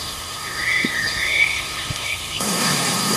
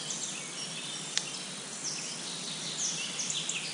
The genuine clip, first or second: second